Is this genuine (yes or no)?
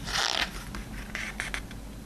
yes